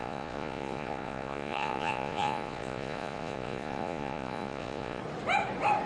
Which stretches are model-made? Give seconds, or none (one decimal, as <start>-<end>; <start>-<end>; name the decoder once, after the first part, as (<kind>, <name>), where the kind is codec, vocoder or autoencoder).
0.0-5.0 (vocoder, Vocos)

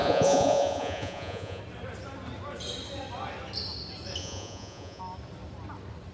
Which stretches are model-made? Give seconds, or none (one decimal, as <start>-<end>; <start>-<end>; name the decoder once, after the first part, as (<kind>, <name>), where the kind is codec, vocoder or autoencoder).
0.0-1.6 (vocoder, Vocos); 4.2-5.0

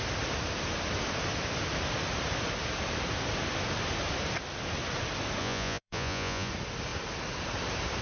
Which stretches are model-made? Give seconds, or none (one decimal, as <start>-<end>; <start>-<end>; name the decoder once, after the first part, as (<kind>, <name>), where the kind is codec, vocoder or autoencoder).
5.4-6.5 (vocoder, Vocos)

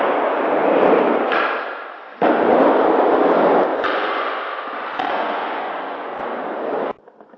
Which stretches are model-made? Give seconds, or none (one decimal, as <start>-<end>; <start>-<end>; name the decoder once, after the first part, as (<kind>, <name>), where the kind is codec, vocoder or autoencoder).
3.7-4.4 (vocoder, Vocos); 4.9-6.2

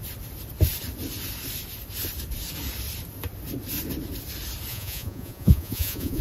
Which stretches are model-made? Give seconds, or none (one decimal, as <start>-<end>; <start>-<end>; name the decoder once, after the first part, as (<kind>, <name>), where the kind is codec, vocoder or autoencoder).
4.7-6.2 (vocoder, Vocos)